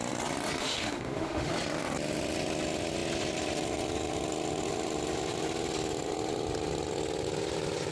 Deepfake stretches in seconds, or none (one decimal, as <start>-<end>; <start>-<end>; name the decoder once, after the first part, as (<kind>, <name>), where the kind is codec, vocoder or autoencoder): 0.6-1.5 (autoencoder, DAC-VAE)